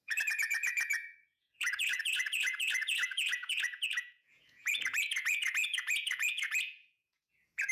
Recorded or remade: remade